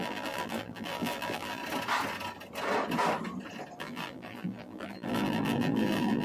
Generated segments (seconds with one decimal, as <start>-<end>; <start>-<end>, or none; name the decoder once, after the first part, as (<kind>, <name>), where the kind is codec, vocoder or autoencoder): 0.0-1.6 (vocoder, BigVGAN v2); 3.8-6.2